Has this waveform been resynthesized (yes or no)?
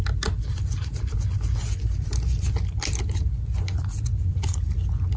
no